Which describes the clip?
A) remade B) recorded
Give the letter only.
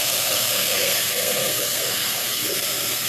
A